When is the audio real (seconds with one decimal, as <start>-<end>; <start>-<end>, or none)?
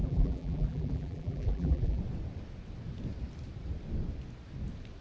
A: 2.0-5.0